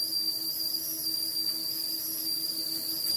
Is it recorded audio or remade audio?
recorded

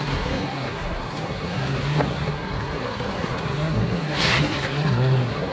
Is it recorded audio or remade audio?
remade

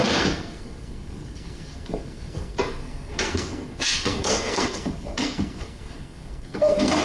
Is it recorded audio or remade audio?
remade